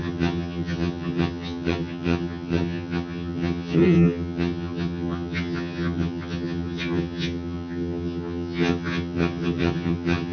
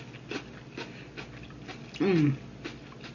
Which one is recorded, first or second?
second